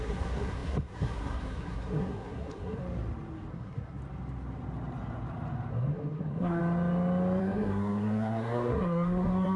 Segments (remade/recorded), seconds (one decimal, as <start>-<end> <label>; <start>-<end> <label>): 0.0-2.8 remade; 2.8-3.5 recorded; 3.5-4.0 remade; 4.0-5.7 recorded; 5.7-6.6 remade; 6.6-7.4 recorded; 7.4-9.6 remade